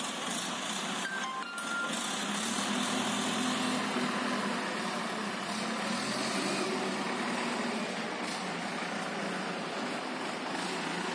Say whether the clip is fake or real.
real